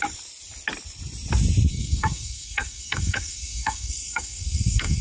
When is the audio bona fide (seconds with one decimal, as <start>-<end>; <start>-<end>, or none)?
0.0-1.7